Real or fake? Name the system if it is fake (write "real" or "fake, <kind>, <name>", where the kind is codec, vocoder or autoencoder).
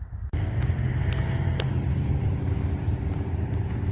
real